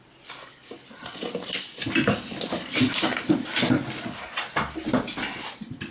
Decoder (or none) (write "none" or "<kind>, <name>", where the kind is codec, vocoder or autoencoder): none